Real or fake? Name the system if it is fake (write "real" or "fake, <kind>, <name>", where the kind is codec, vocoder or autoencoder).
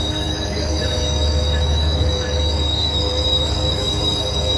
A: fake, codec, DAC